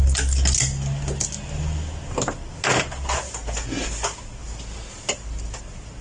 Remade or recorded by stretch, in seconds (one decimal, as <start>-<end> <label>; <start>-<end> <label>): 0.0-6.0 recorded